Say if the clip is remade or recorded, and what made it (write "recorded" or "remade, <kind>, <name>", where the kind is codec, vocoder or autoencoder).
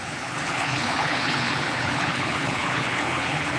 remade, codec, HILCodec